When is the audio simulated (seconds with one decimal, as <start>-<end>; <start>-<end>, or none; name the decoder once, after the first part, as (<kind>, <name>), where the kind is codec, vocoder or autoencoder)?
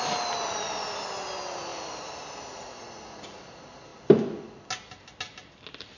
1.7-2.8 (vocoder, BigVGAN v2)